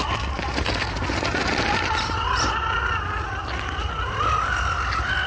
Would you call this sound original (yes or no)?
yes